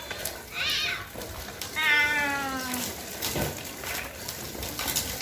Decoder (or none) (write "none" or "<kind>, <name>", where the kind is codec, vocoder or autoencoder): none